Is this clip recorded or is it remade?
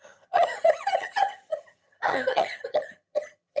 remade